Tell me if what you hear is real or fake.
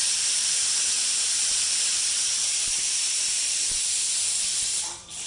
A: fake